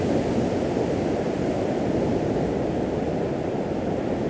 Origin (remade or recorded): recorded